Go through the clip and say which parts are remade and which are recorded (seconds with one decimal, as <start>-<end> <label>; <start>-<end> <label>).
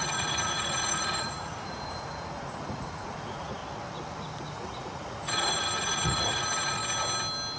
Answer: 0.0-3.6 remade; 3.6-4.4 recorded; 4.4-6.8 remade; 6.8-7.6 recorded